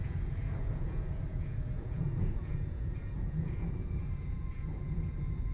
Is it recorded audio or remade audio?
remade